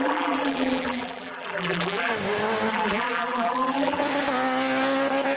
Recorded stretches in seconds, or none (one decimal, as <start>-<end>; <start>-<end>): 2.1-2.7; 4.0-5.4